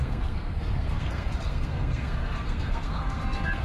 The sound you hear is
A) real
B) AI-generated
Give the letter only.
B